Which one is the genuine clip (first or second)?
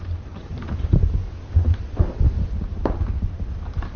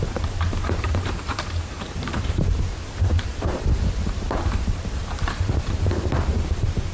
first